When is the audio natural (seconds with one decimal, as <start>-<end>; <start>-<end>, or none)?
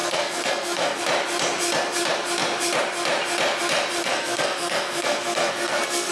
1.0-4.0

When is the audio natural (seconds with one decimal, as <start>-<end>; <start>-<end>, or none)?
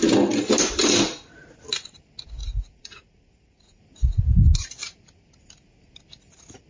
0.0-2.4; 3.8-6.7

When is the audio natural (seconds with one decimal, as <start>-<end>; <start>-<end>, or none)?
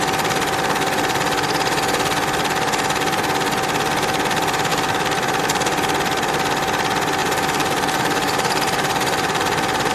0.0-4.7; 5.4-7.2